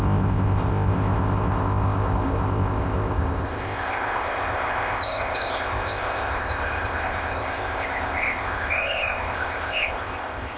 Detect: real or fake fake